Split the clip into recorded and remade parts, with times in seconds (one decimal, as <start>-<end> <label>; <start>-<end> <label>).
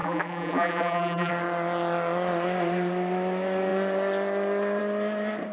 0.0-1.3 remade; 1.3-5.5 recorded